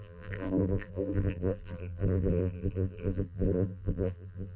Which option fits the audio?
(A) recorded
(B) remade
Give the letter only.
B